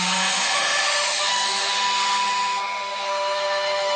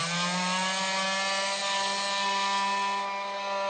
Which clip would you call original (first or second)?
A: second